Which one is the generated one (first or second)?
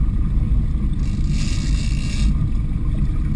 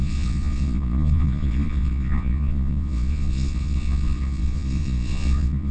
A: second